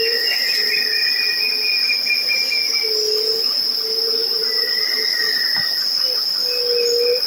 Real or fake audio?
real